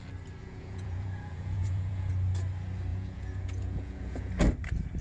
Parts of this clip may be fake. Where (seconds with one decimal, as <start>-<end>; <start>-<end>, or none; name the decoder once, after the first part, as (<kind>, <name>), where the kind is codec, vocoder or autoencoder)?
0.4-2.1 (vocoder, Vocos); 2.9-4.3